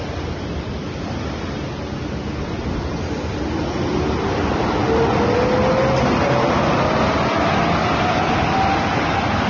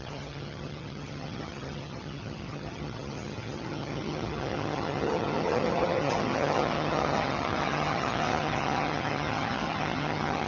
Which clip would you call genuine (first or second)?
first